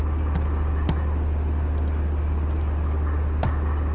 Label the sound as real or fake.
real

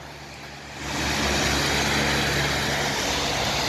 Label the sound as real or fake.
real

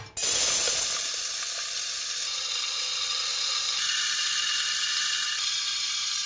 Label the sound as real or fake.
real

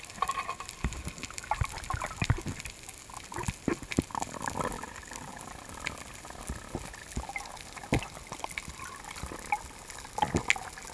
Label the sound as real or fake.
real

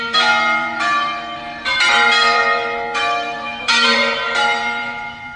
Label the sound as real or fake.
fake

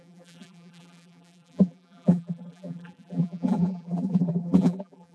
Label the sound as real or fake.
fake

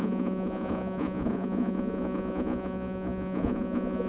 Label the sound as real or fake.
fake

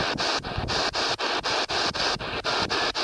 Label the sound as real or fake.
real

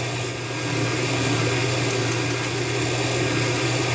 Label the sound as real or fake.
real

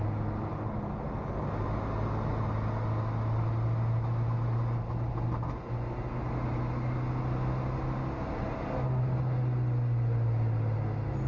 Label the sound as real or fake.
real